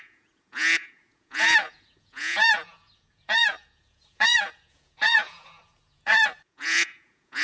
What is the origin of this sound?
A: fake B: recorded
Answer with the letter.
A